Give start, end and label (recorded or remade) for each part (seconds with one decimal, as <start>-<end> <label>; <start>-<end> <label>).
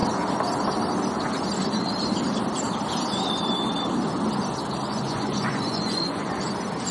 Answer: 0.0-4.9 recorded; 4.9-6.4 remade; 6.4-6.9 recorded